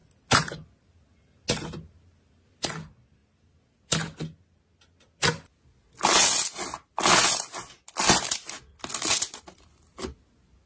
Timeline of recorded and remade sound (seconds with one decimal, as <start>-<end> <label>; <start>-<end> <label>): 0.0-10.7 recorded